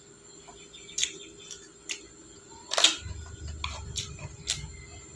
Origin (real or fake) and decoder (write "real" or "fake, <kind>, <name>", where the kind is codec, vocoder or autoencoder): real